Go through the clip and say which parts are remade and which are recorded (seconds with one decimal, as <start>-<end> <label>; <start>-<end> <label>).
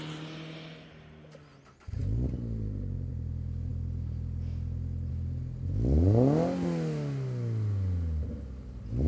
0.0-9.1 recorded